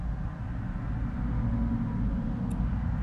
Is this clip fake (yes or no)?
no